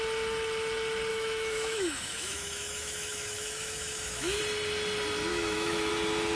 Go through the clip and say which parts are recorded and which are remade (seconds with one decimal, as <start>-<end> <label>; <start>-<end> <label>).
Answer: 0.0-1.1 recorded; 1.1-4.4 remade; 4.4-5.3 recorded; 5.3-5.9 remade; 5.9-6.4 recorded